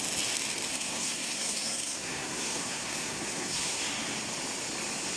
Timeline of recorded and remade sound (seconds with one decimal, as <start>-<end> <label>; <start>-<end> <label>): 0.0-0.7 recorded; 0.7-3.8 remade; 3.8-5.2 recorded